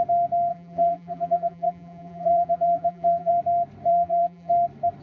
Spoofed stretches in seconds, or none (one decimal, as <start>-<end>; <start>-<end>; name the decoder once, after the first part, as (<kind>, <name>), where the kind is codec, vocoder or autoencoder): 0.5-3.3 (vocoder, BigVGAN v2); 3.9-4.5